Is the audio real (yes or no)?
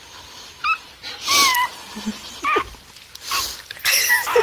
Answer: yes